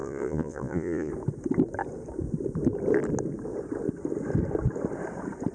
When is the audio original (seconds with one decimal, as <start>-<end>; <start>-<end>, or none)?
1.1-5.5